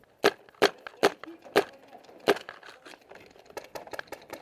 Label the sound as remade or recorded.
recorded